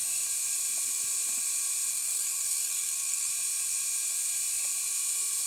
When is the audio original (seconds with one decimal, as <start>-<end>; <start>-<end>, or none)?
0.0-1.9; 3.3-5.5